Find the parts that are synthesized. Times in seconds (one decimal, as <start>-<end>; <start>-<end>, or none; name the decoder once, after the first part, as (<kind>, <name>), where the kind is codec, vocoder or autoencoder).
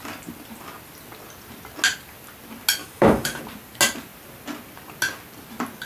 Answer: 2.8-3.4 (autoencoder, DAC-VAE)